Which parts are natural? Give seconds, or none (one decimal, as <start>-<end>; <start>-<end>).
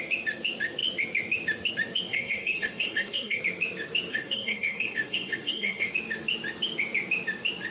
0.0-2.1; 3.4-4.1; 5.9-7.7